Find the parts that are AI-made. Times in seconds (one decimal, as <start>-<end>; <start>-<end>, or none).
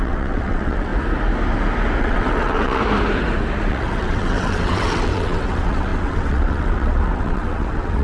0.0-0.9; 2.0-2.8; 3.7-8.0